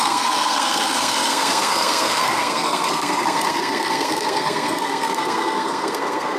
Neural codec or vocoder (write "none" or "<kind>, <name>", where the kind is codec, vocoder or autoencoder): codec, SNAC